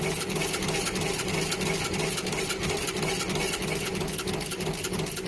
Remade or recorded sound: recorded